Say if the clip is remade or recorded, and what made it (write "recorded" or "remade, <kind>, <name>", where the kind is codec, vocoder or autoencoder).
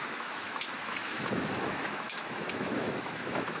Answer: remade, autoencoder, DAC-VAE